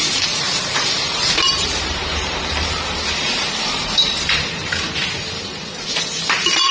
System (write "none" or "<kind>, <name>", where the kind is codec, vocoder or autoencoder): vocoder, BigVGAN v2